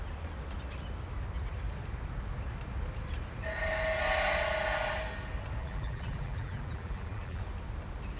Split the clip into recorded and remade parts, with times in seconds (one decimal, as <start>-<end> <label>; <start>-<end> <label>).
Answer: 0.0-5.6 recorded; 5.6-7.4 remade; 7.4-8.2 recorded